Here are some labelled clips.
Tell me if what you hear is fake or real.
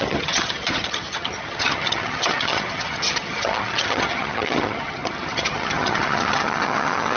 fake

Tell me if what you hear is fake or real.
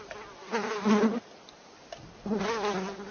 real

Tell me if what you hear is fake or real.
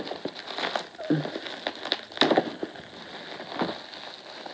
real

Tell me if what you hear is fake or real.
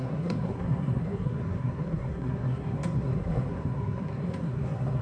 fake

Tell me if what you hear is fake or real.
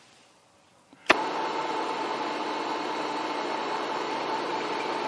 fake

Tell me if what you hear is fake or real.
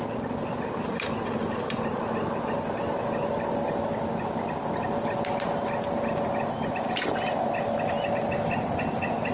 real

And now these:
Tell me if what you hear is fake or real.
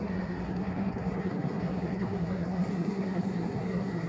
fake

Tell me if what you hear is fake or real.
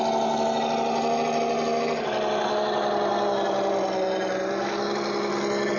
real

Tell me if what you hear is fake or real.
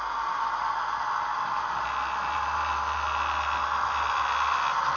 real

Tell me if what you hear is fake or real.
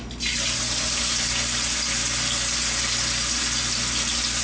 real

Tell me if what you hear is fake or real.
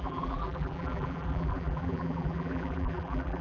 fake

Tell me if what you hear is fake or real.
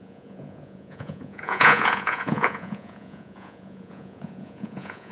fake